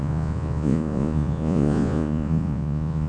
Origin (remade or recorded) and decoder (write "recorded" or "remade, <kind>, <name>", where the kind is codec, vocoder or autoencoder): remade, vocoder, Vocos